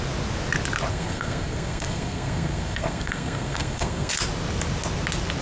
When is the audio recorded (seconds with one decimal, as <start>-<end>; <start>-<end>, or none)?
0.0-0.9; 4.1-5.4